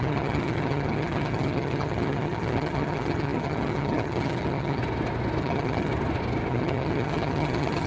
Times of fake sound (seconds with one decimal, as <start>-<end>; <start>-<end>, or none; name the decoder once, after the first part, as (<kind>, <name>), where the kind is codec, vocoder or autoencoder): 0.0-4.8 (vocoder, HiFi-GAN); 5.4-5.9; 6.5-7.9